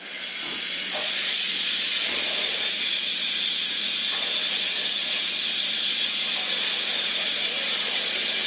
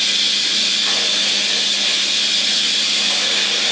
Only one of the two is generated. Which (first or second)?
first